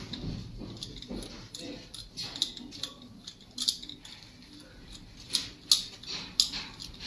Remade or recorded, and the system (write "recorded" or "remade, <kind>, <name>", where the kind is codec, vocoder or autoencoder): recorded